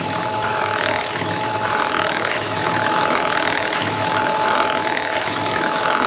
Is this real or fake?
fake